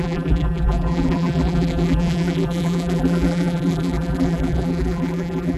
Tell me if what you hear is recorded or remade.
remade